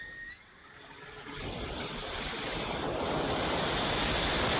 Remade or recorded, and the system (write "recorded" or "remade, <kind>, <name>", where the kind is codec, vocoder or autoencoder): recorded